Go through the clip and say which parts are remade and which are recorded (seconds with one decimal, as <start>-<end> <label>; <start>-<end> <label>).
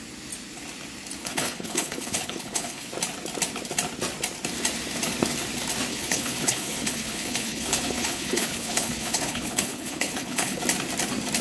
0.0-1.2 recorded; 1.2-2.9 remade; 2.9-5.9 recorded; 5.9-10.6 remade; 10.6-11.4 recorded